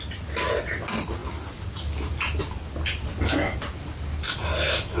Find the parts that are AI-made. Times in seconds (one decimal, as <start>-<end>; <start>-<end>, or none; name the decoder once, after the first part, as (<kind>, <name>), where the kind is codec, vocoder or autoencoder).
none